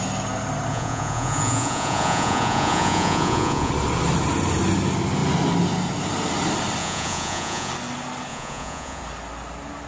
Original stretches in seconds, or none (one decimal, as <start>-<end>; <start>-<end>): 0.0-0.7; 3.7-6.8; 7.7-8.3; 9.0-9.9